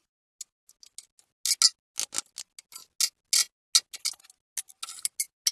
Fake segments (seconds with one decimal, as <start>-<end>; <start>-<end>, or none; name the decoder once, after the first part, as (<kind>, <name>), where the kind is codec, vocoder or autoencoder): none

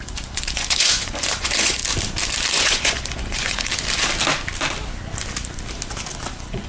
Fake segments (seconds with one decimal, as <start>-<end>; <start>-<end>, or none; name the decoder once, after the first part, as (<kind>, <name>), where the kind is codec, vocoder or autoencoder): 0.0-1.8 (vocoder, Vocos); 2.5-3.7; 6.3-6.7